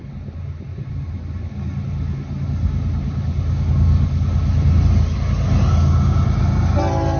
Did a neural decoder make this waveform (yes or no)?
no